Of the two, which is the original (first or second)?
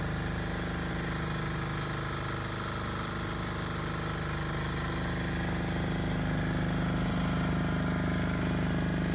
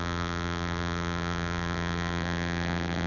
first